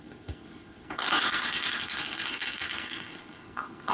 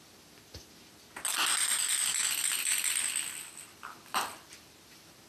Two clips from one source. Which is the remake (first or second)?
first